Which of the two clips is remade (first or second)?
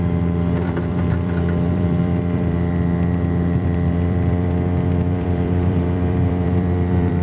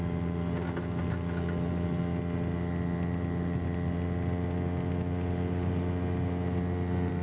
first